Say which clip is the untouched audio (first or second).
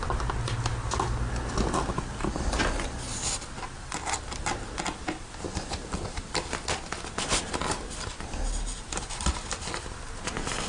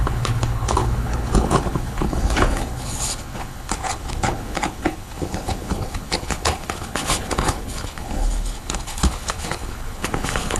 first